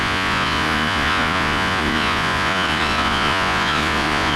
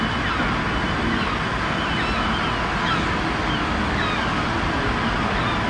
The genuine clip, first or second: second